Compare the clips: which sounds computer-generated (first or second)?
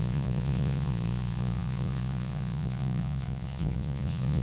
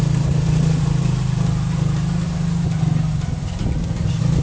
first